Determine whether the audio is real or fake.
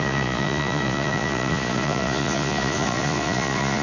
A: fake